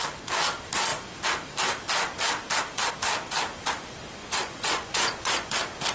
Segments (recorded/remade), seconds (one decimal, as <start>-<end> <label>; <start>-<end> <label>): 0.0-4.2 recorded; 4.2-5.5 remade; 5.5-5.9 recorded